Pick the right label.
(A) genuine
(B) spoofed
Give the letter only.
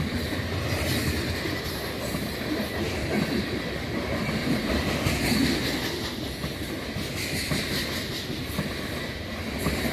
A